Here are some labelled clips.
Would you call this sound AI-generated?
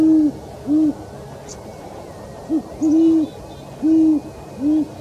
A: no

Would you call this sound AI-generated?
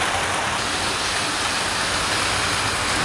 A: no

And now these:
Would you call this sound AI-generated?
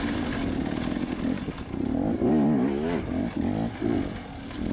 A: no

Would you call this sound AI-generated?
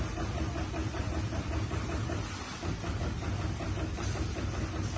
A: no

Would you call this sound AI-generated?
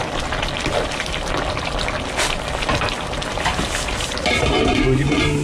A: no